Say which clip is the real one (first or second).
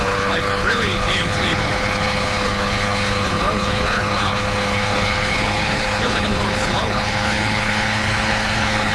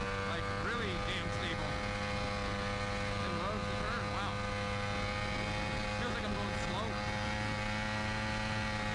second